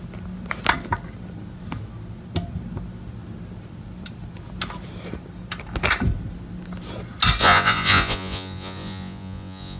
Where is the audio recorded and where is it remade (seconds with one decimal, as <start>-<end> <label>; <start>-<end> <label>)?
0.0-7.4 recorded; 7.4-9.8 remade